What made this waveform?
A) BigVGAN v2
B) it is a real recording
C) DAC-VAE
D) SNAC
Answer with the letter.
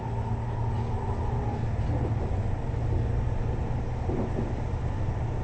B